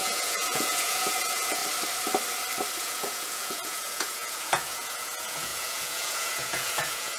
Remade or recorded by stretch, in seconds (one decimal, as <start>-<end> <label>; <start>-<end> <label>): 0.0-1.6 remade; 1.6-2.8 recorded; 2.8-7.2 remade